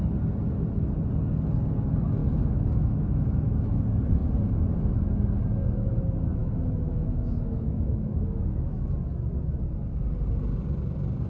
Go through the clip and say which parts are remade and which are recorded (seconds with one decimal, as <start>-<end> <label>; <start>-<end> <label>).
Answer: 0.0-2.2 recorded; 2.2-3.8 remade; 3.8-6.4 recorded; 6.4-8.9 remade; 8.9-11.3 recorded